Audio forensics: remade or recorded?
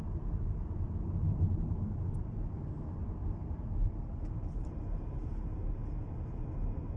recorded